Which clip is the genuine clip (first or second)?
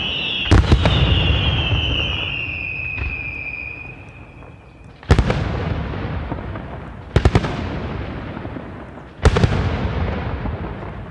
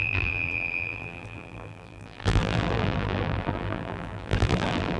first